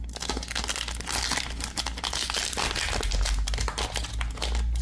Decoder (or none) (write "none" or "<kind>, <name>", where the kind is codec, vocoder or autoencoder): none